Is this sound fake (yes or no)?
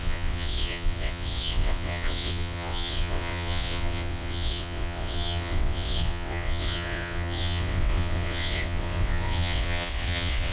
yes